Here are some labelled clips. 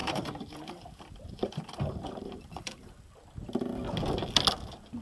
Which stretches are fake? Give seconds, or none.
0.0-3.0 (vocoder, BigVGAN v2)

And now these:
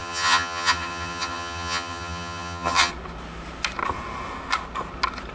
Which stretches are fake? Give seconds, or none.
0.0-2.9 (vocoder, HiFi-GAN)

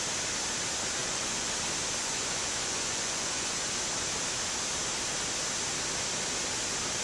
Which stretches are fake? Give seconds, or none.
1.0-1.5 (vocoder, Vocos); 2.0-3.6

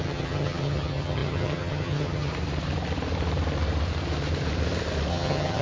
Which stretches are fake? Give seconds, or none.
0.0-2.3 (vocoder, HiFi-GAN); 5.1-5.6

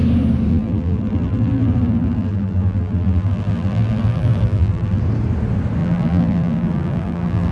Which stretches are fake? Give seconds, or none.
0.5-5.0 (vocoder, BigVGAN v2); 5.8-7.5